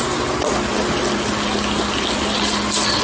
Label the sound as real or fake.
real